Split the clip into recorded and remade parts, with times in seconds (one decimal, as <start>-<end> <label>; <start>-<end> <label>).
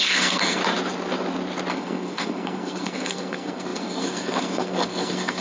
0.0-0.6 remade; 0.6-1.7 recorded; 1.7-5.4 remade